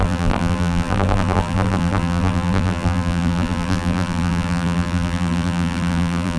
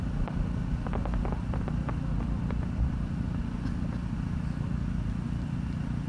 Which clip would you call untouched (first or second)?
second